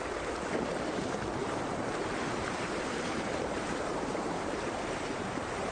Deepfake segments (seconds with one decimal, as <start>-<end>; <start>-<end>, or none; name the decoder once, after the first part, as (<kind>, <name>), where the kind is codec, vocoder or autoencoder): 1.4-4.5 (vocoder, BigVGAN v2)